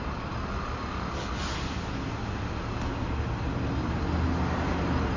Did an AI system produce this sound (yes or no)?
no